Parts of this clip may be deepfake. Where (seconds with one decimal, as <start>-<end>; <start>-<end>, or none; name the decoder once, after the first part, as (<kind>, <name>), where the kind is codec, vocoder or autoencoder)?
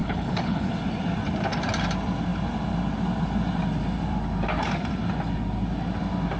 0.0-0.7 (codec, HILCodec)